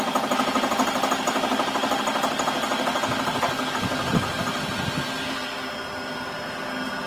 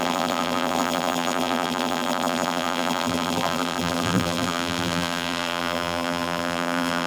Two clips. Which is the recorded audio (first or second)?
first